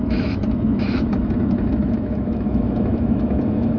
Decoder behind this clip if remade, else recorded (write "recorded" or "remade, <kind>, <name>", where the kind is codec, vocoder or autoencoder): remade, autoencoder, DAC-VAE